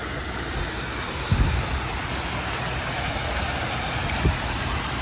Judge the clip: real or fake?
real